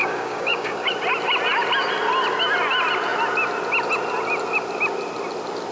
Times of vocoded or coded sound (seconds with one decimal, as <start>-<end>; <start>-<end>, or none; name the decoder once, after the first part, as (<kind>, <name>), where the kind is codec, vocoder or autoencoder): 0.0-0.9 (codec, DAC)